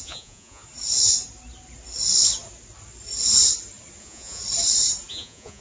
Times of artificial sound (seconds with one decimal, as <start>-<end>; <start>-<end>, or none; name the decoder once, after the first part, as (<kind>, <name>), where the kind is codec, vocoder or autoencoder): 0.0-0.6 (vocoder, Vocos); 4.0-4.4; 5.1-5.6